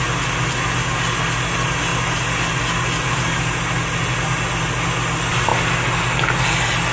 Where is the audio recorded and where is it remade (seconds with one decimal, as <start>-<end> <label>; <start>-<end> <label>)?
0.0-6.9 recorded